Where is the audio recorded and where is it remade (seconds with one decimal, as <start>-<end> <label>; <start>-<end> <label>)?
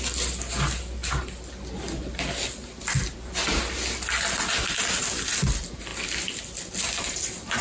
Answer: 0.0-7.6 recorded